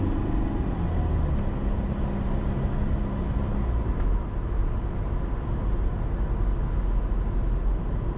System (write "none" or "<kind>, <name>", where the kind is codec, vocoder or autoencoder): none